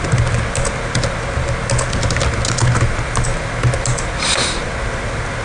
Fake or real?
real